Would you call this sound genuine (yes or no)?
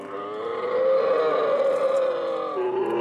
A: yes